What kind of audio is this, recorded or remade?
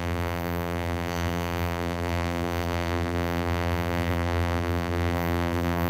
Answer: remade